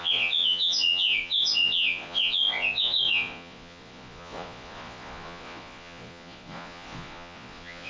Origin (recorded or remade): remade